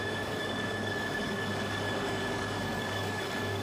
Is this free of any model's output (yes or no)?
no